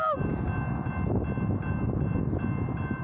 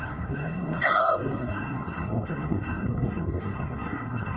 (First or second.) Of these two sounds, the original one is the first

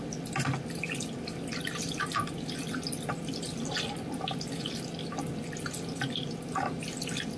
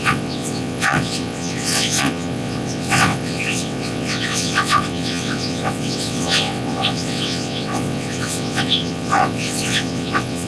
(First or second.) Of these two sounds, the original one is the first